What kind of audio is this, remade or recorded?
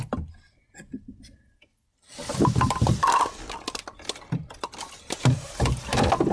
recorded